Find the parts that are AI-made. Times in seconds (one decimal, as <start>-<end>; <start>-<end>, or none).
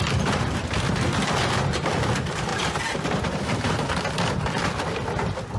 none